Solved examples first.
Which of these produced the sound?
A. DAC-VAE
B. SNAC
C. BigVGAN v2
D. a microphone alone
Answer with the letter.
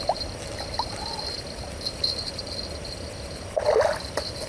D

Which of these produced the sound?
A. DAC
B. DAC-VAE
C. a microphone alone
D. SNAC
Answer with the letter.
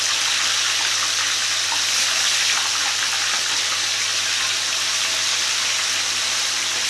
C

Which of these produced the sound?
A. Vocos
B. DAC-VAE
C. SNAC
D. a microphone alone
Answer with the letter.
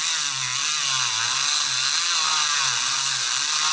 D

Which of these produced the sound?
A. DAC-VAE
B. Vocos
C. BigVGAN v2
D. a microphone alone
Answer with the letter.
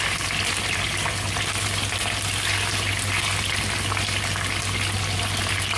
D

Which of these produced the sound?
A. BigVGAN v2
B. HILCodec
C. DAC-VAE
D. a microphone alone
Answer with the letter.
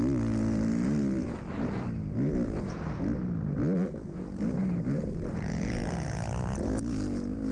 D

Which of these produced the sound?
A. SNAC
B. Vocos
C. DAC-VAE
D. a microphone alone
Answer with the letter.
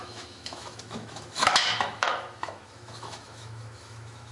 C